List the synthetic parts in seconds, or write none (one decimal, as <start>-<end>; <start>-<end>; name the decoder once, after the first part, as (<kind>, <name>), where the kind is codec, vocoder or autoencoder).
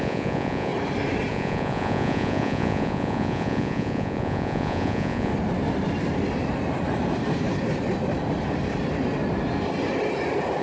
0.0-0.7 (vocoder, Vocos); 1.3-5.3